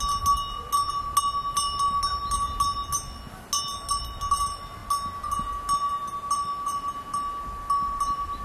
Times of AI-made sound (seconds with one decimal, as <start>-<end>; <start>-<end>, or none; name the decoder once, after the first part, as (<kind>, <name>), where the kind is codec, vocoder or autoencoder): none